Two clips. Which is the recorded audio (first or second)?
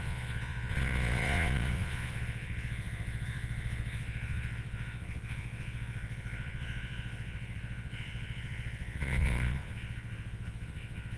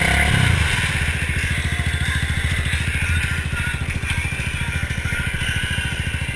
second